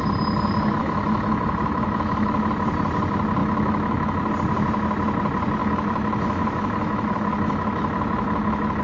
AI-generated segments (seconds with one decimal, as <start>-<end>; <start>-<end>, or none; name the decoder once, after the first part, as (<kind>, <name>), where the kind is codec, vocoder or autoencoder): 0.8-2.4 (autoencoder, DAC-VAE); 3.4-4.3; 5.6-8.8